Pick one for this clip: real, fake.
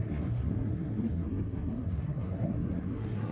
fake